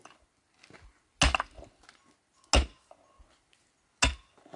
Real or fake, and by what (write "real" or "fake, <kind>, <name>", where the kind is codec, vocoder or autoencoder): real